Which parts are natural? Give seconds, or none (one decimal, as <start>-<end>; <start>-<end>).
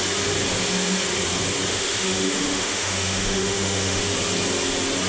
0.0-1.7; 4.0-5.1